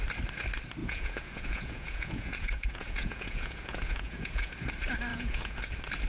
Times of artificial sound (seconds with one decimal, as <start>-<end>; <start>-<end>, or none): 0.8-4.5; 5.1-5.6